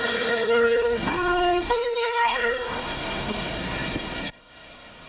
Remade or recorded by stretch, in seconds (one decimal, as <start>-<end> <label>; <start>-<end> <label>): 0.0-5.1 remade